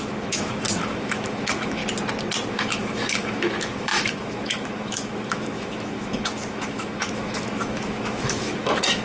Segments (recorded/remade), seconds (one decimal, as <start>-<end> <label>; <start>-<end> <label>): 0.0-1.8 remade; 1.8-2.5 recorded; 2.5-9.0 remade